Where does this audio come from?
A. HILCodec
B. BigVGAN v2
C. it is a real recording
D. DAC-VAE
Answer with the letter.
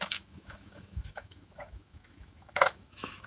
D